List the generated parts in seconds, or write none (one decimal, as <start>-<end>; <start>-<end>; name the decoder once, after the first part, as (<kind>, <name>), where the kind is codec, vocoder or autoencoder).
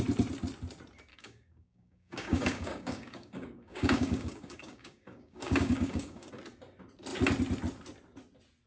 1.1-6.3 (codec, DAC)